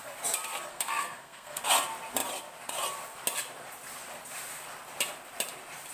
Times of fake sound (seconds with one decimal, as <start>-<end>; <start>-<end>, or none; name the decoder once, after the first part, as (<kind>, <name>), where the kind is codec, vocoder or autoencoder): 0.7-1.6 (codec, SNAC)